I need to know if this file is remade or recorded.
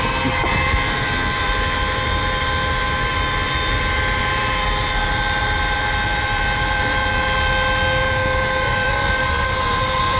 remade